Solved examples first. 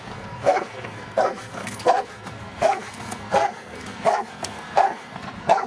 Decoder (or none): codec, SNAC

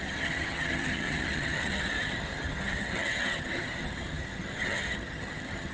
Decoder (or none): vocoder, HiFi-GAN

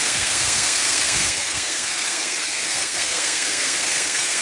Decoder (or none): codec, SNAC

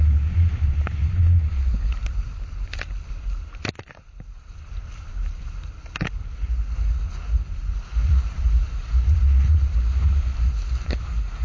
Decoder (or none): none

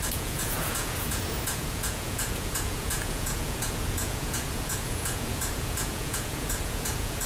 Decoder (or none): vocoder, Vocos